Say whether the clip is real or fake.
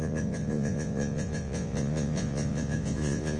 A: fake